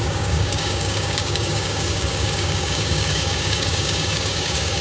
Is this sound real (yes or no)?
no